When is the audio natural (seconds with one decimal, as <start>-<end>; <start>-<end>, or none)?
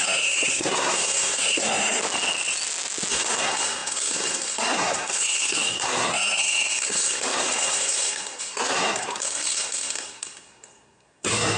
2.0-3.1